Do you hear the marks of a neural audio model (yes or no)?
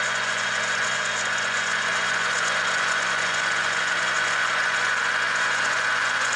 yes